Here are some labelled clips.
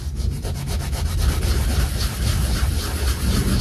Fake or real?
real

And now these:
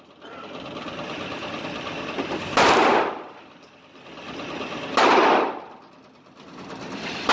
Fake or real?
real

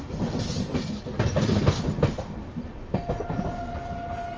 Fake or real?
real